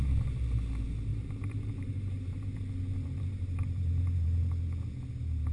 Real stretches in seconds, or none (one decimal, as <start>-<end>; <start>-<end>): 0.0-1.1; 4.4-5.5